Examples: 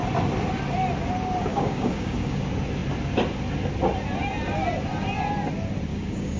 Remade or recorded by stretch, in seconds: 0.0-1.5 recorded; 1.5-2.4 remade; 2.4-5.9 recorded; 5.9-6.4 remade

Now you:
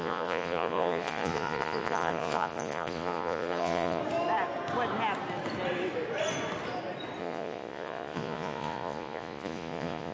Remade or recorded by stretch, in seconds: 0.0-4.0 remade; 4.0-7.2 recorded; 7.2-10.1 remade

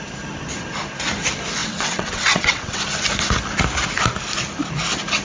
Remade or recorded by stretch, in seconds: 0.0-1.6 recorded; 1.6-2.8 remade; 2.8-5.2 recorded

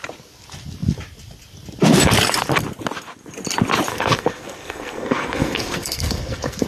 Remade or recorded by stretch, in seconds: 0.0-3.9 recorded; 3.9-6.7 remade

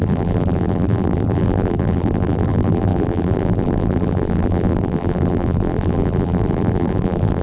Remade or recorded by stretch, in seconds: 0.0-7.4 remade

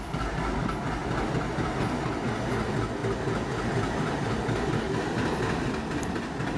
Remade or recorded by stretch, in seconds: 0.0-6.6 recorded

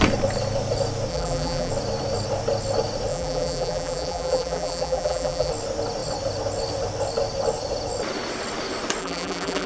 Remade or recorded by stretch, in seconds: 0.0-1.1 recorded; 1.1-1.7 remade; 1.7-3.1 recorded; 3.1-5.5 remade; 5.5-9.0 recorded; 9.0-9.7 remade

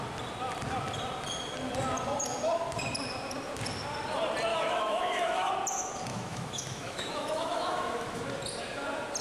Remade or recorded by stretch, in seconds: 0.0-4.5 recorded; 4.5-5.5 remade; 5.5-6.1 recorded; 6.1-8.2 remade; 8.2-9.2 recorded